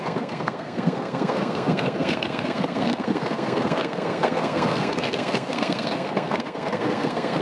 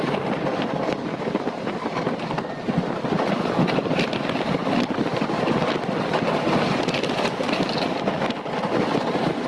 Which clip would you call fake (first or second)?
first